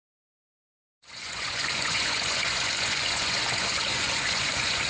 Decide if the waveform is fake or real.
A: fake